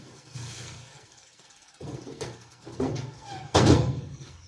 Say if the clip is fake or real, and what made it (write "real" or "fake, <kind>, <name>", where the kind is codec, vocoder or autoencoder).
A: fake, codec, SNAC